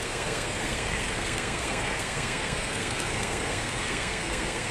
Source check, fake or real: fake